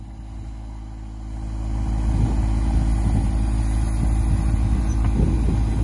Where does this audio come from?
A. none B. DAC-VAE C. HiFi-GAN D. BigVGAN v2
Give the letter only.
A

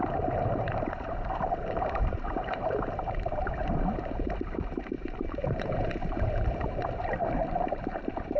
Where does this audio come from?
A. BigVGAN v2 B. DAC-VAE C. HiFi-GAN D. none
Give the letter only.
A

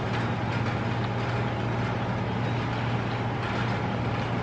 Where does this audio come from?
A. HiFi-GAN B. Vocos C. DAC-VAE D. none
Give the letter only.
D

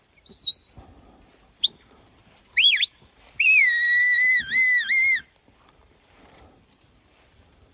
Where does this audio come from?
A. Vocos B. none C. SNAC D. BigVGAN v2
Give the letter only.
D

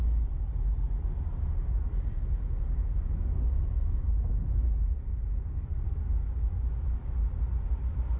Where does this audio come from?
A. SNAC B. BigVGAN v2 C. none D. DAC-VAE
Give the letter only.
B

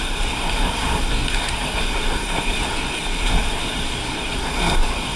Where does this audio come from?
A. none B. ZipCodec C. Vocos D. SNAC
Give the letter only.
D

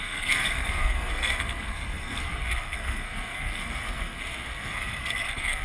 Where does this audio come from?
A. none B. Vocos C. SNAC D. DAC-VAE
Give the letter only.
C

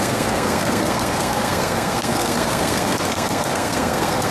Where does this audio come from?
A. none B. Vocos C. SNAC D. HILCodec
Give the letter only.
C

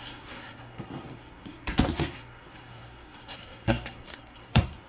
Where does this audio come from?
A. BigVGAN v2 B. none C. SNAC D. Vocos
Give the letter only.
C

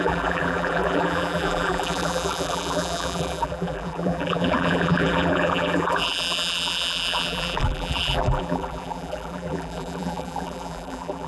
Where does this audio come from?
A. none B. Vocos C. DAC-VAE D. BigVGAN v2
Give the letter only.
D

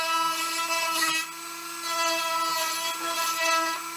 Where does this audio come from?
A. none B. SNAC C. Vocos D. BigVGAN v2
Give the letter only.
A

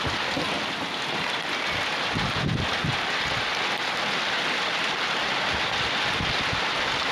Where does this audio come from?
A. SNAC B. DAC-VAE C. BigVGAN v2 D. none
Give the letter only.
D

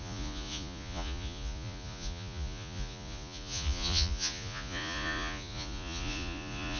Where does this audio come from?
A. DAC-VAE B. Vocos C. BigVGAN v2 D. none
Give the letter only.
B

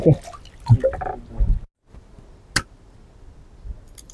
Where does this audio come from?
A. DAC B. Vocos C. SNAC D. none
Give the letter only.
D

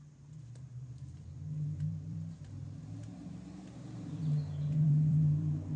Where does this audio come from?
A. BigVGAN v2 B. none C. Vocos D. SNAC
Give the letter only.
A